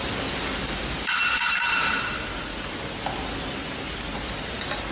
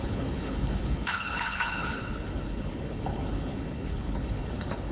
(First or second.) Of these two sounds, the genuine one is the first